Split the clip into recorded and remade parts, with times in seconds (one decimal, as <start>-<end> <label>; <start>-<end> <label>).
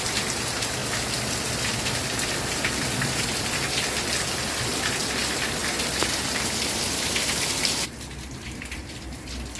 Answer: 0.0-0.8 remade; 0.8-1.3 recorded; 1.3-9.6 remade